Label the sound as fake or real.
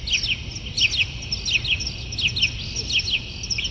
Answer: real